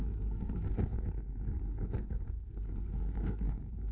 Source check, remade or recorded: remade